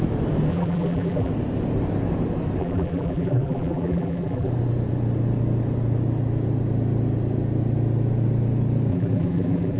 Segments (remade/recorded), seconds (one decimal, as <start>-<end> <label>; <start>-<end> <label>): 0.0-0.5 recorded; 0.5-1.3 remade; 1.3-2.6 recorded; 2.6-4.5 remade; 4.5-8.9 recorded; 8.9-9.8 remade